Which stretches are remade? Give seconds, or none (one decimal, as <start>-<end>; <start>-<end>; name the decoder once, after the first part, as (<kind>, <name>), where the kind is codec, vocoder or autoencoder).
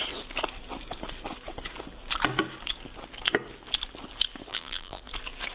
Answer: 4.5-5.0 (vocoder, BigVGAN v2)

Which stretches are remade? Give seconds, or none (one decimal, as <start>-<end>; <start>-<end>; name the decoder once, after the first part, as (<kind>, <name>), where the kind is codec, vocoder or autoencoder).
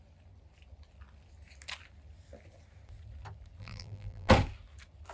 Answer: 3.6-4.3 (vocoder, BigVGAN v2)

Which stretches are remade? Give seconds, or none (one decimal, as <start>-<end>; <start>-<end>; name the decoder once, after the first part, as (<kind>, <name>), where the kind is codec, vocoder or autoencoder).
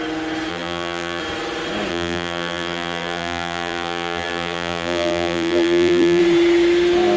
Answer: 0.5-1.2 (vocoder, BigVGAN v2); 1.9-6.2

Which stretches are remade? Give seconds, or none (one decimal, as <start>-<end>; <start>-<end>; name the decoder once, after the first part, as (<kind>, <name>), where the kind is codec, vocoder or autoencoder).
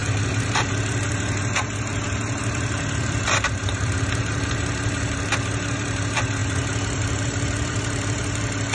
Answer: 0.0-8.7 (vocoder, BigVGAN v2)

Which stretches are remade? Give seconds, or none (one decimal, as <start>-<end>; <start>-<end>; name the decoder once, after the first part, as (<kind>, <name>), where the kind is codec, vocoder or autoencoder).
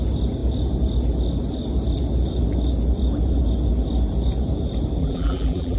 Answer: 5.0-5.8 (vocoder, BigVGAN v2)